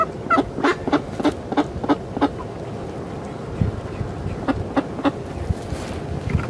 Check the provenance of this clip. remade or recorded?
recorded